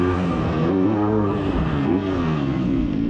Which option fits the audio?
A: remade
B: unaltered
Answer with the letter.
A